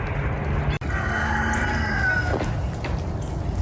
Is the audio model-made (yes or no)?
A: no